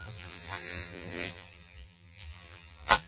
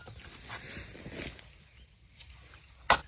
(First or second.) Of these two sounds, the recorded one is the second